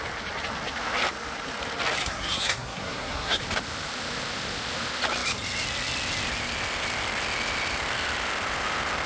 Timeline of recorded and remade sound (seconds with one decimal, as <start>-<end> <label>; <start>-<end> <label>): 0.0-2.0 recorded; 2.0-3.4 remade; 3.4-9.1 recorded